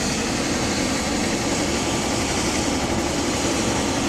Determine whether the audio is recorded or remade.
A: recorded